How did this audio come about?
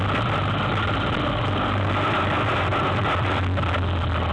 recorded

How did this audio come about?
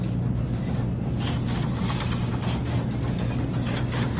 recorded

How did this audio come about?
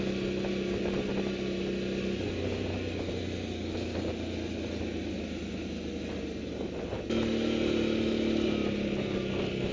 recorded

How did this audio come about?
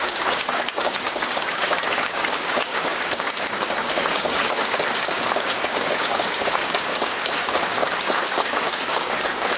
remade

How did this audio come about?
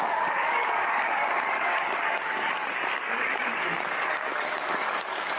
remade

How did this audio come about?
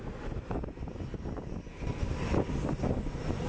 recorded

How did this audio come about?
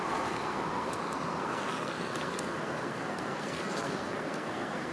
remade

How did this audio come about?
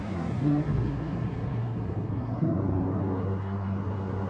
remade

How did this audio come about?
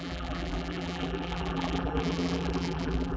remade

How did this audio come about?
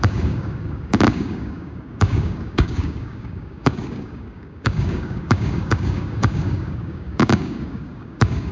remade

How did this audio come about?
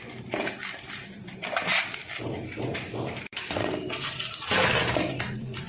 remade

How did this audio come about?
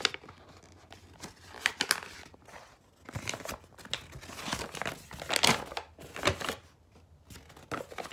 recorded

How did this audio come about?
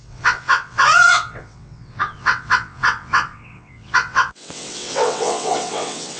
remade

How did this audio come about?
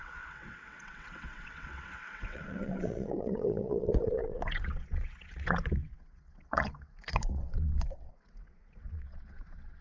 remade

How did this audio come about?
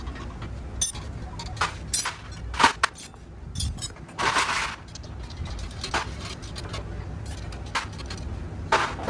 recorded